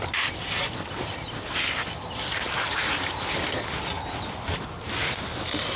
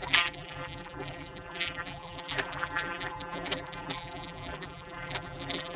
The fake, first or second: second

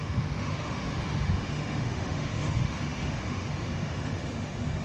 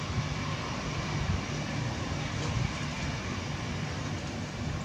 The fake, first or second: first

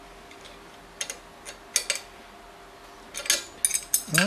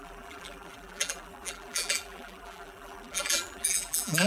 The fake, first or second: second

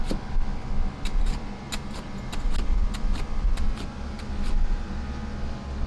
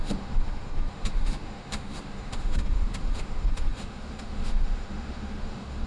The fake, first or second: second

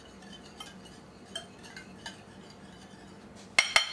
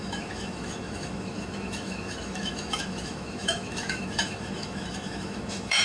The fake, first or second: second